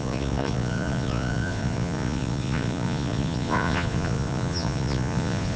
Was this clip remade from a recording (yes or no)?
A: yes